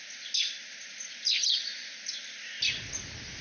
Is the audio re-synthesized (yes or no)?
no